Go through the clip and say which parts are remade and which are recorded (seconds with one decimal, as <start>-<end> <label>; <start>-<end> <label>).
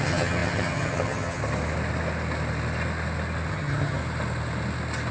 0.0-1.4 remade; 1.4-3.5 recorded; 3.5-4.0 remade; 4.0-5.1 recorded